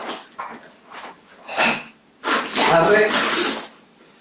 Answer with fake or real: real